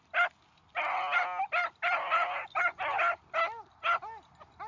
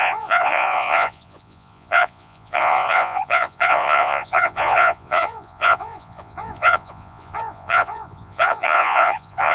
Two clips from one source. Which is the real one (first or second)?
first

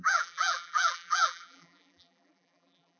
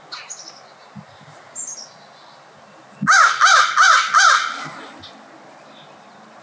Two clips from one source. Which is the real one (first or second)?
second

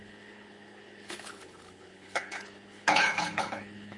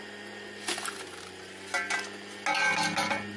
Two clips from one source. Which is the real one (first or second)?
second